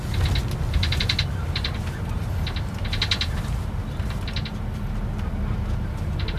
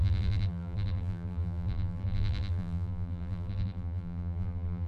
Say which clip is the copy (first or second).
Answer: second